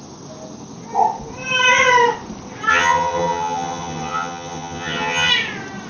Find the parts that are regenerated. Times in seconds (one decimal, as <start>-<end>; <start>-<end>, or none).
2.7-5.3